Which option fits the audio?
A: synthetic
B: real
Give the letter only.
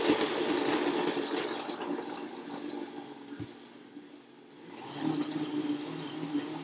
B